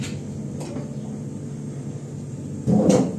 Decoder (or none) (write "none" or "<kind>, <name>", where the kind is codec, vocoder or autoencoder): none